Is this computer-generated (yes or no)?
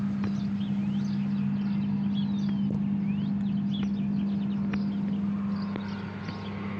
no